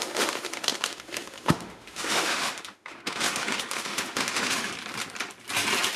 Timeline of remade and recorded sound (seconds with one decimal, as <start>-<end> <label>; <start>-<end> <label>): 0.0-4.7 remade; 4.7-6.0 recorded